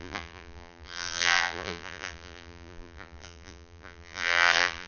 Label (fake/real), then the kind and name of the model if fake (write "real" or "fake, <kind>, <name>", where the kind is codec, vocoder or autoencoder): fake, vocoder, BigVGAN v2